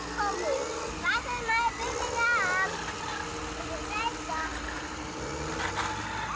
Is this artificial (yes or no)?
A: no